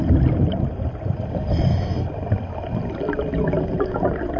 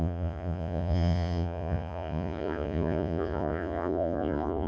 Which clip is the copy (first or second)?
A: second